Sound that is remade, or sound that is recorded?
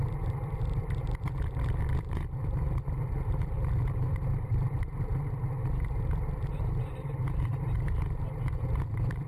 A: remade